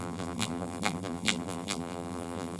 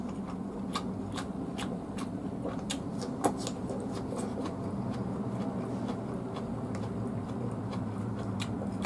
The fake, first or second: first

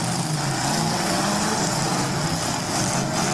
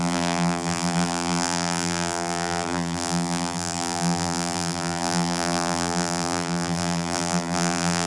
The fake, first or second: second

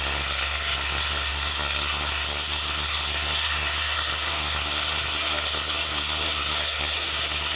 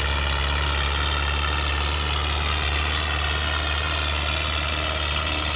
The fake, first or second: first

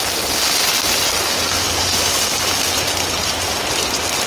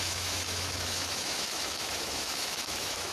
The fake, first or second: second